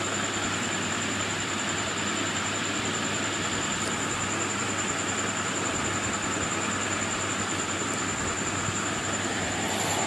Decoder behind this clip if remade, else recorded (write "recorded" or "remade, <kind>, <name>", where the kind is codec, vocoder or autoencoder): recorded